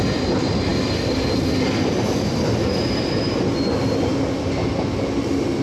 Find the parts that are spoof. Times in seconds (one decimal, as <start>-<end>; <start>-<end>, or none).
none